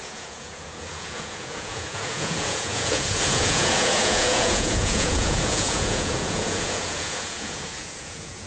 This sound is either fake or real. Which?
fake